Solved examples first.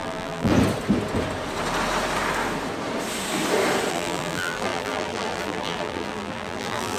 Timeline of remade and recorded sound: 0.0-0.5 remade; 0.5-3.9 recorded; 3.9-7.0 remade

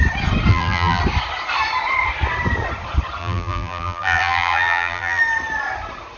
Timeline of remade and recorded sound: 0.0-0.5 recorded; 0.5-1.0 remade; 1.0-3.2 recorded; 3.2-5.2 remade; 5.2-6.2 recorded

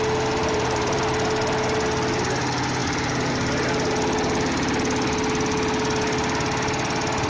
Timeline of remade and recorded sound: 0.0-0.4 recorded; 0.4-1.0 remade; 1.0-2.8 recorded; 2.8-3.3 remade; 3.3-7.3 recorded

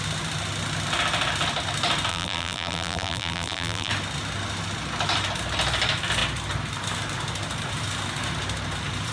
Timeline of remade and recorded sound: 0.0-2.1 recorded; 2.1-3.9 remade; 3.9-9.1 recorded

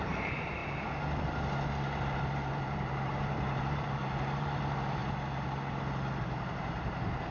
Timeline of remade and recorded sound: 0.0-0.6 remade; 0.6-1.7 recorded; 1.7-5.0 remade; 5.0-6.2 recorded; 6.2-7.3 remade

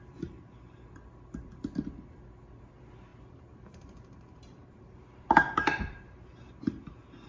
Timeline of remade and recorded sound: 0.0-3.1 recorded; 3.1-7.3 remade

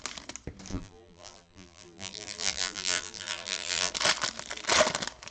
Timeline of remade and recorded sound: 0.0-0.7 recorded; 0.7-3.9 remade; 3.9-5.3 recorded

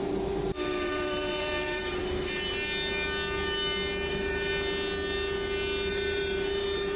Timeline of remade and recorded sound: 0.0-2.0 remade; 2.0-4.1 recorded; 4.1-4.5 remade; 4.5-5.9 recorded; 5.9-7.0 remade